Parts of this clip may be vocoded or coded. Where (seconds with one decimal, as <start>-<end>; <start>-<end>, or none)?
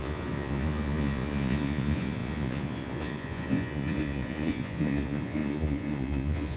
0.0-6.6